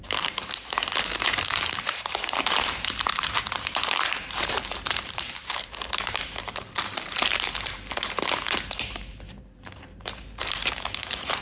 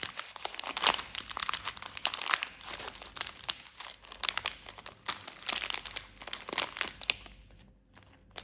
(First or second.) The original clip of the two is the second